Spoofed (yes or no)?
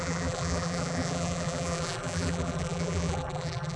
yes